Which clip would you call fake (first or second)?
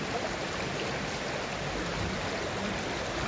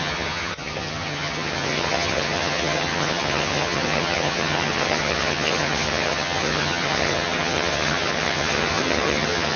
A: second